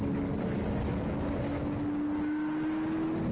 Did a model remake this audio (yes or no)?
no